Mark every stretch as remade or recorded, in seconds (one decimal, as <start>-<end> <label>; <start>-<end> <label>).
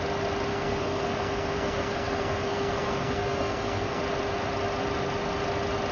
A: 0.0-0.5 recorded; 0.5-4.0 remade; 4.0-5.9 recorded